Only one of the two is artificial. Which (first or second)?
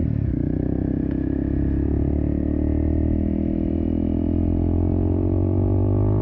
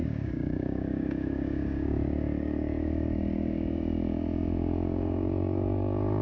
second